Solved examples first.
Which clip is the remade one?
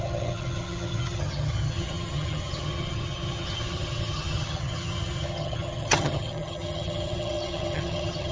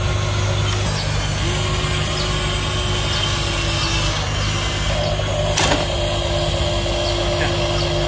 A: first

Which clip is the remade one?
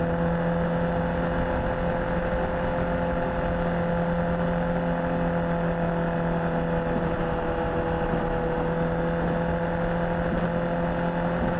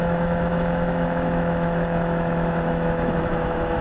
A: second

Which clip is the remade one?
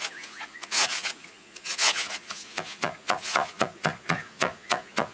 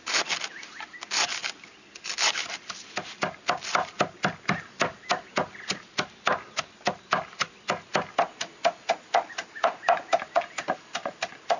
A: first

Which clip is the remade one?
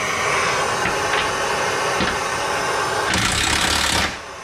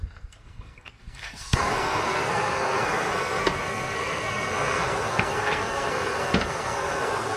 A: second